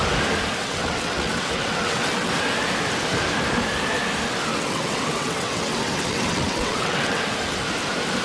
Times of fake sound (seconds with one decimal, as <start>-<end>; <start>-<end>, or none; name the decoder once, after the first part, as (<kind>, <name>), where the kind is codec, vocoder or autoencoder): 0.6-2.3 (vocoder, WaveNeXt); 4.5-7.2